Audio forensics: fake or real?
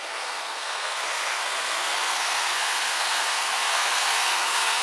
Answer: fake